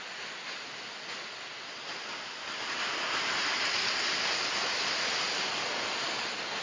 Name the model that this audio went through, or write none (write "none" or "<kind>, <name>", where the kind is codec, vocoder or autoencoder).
none